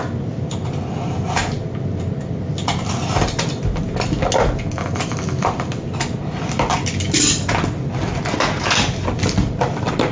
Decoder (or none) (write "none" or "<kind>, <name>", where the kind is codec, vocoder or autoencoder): none